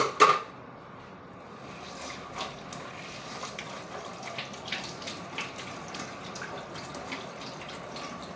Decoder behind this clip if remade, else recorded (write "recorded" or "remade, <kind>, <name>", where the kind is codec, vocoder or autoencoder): recorded